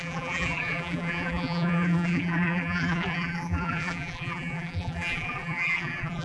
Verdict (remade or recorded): remade